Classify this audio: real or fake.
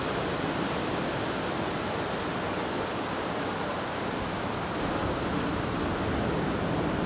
real